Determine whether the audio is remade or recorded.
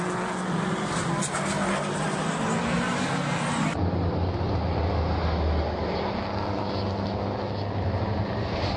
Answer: recorded